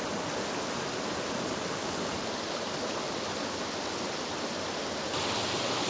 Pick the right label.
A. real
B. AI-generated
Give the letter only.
A